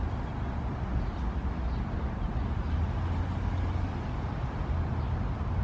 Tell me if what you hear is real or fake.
real